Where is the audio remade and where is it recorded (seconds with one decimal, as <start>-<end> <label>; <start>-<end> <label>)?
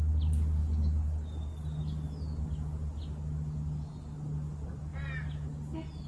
0.0-6.1 recorded